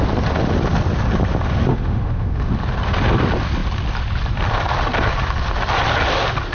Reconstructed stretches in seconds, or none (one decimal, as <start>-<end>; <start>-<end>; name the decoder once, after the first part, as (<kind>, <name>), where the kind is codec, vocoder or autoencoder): 1.7-2.4 (autoencoder, DAC-VAE)